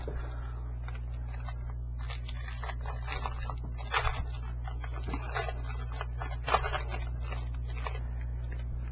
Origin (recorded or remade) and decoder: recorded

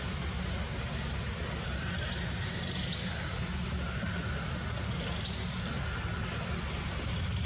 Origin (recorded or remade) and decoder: recorded